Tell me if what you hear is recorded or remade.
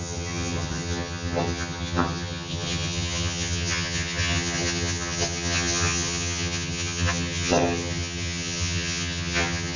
remade